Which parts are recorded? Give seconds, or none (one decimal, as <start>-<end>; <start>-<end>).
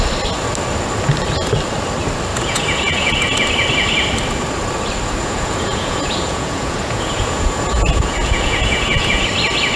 0.0-2.3; 3.1-5.2; 9.3-9.8